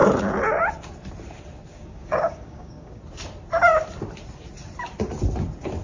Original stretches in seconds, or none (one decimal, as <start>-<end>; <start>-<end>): 0.0-1.7; 3.0-5.8